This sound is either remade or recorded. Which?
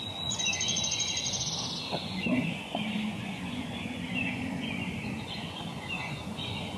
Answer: remade